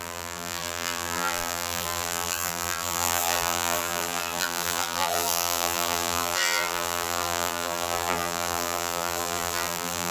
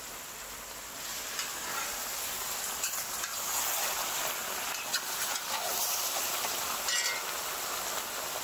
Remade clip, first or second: first